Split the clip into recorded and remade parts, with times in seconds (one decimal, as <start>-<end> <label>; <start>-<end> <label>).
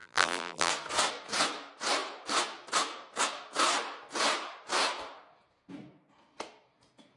0.0-0.7 remade; 0.7-7.2 recorded